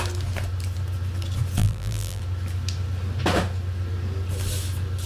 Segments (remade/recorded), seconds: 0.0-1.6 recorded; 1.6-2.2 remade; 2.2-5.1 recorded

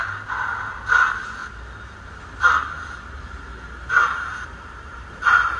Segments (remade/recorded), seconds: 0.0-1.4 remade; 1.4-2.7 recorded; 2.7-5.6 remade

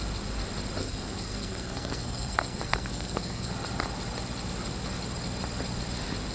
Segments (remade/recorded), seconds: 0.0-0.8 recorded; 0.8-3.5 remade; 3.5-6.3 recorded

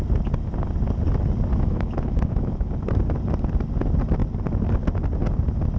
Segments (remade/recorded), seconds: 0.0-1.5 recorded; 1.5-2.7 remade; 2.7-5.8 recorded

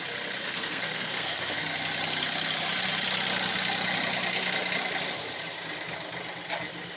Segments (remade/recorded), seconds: 0.0-0.4 recorded; 0.4-1.6 remade; 1.6-7.0 recorded

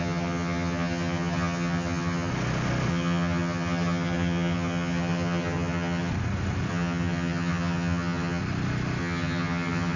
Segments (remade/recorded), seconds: 0.0-2.3 remade; 2.3-2.9 recorded; 2.9-6.1 remade; 6.1-6.7 recorded; 6.7-8.4 remade; 8.4-9.0 recorded; 9.0-10.0 remade

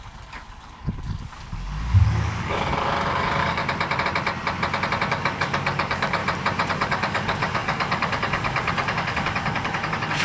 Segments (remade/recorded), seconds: 0.0-3.6 remade; 3.6-5.1 recorded; 5.1-6.2 remade; 6.2-6.7 recorded; 6.7-10.2 remade